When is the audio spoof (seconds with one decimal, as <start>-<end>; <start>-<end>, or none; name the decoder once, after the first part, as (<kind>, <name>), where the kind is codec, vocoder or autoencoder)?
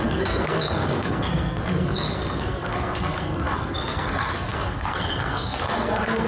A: 0.0-6.3 (codec, SNAC)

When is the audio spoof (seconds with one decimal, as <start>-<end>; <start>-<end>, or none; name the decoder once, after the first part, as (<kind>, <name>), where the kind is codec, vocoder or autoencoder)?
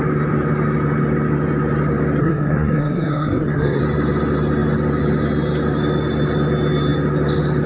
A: 2.2-3.8 (codec, SNAC)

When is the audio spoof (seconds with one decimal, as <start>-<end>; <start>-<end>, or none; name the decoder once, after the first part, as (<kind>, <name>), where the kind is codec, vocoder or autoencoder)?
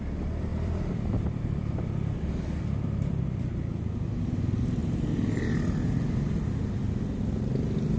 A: 0.5-1.8 (vocoder, BigVGAN v2); 4.8-6.5